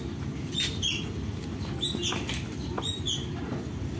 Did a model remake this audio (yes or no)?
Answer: no